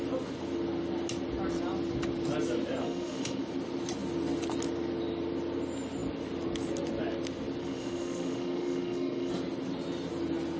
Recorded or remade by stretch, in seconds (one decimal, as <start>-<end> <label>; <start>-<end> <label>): 0.0-2.8 recorded; 2.8-3.4 remade; 3.4-7.6 recorded; 7.6-9.3 remade; 9.3-10.6 recorded

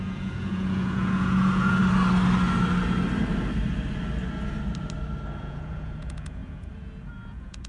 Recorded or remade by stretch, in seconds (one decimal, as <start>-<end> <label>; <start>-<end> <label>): 0.0-1.8 remade; 1.8-5.4 recorded; 5.4-7.7 remade

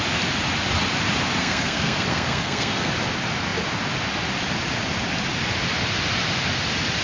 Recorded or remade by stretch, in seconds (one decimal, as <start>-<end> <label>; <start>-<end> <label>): 0.0-1.4 recorded; 1.4-2.9 remade; 2.9-7.0 recorded

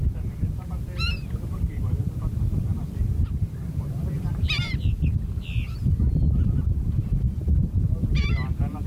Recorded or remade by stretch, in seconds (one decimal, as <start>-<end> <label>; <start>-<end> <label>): 0.0-1.1 remade; 1.1-2.2 recorded; 2.2-8.9 remade

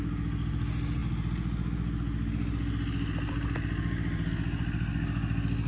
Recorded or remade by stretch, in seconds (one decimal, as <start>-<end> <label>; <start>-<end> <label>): 0.0-5.7 recorded

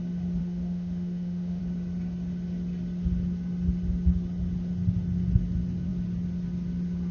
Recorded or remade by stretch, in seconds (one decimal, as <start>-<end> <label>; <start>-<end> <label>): 0.0-0.4 recorded; 0.4-1.6 remade; 1.6-7.1 recorded

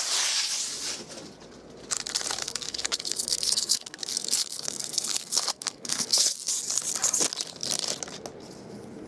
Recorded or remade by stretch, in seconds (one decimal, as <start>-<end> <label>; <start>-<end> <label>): 0.0-2.4 recorded; 2.4-6.5 remade; 6.5-9.1 recorded